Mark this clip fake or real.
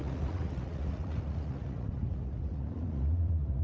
fake